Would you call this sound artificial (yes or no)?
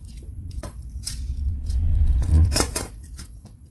yes